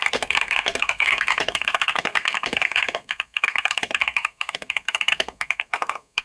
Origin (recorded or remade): remade